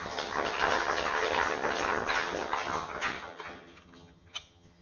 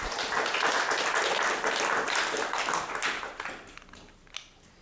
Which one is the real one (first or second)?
second